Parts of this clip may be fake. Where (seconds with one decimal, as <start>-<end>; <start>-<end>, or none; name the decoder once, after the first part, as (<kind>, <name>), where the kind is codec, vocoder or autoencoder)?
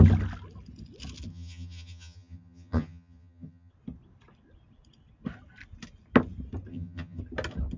1.3-3.7 (vocoder, HiFi-GAN); 6.7-7.2